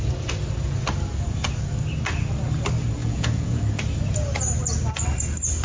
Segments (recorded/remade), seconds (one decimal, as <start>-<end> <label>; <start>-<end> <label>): 0.0-3.0 recorded; 3.0-3.6 remade; 3.6-5.6 recorded